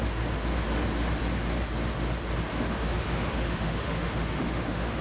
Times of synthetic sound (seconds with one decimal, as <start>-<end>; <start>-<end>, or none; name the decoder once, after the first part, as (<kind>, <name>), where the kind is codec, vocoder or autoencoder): 2.5-5.0 (autoencoder, DAC-VAE)